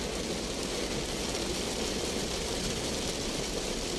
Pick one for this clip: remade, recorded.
recorded